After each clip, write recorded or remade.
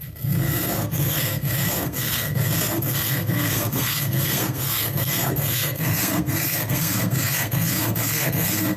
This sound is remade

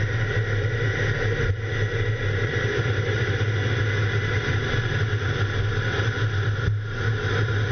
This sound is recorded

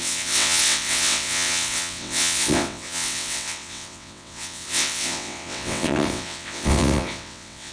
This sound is remade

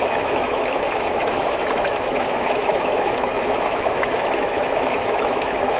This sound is remade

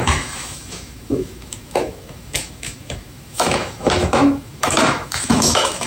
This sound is remade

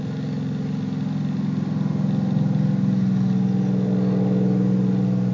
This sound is recorded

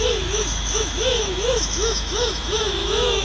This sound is remade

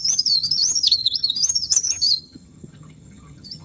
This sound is remade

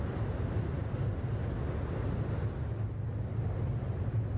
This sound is recorded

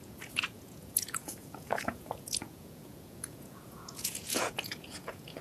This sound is remade